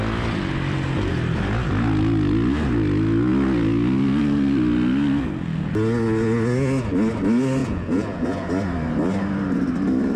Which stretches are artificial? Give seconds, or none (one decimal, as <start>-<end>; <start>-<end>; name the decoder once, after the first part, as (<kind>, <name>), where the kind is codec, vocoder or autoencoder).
7.6-8.5 (vocoder, Vocos)